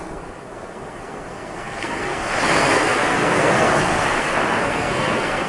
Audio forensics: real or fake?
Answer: fake